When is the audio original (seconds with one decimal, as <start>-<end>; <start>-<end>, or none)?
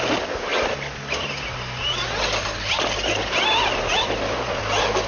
0.0-5.1